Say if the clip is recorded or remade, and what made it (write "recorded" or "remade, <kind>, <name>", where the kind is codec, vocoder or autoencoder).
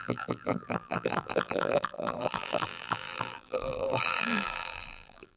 remade, vocoder, BigVGAN v2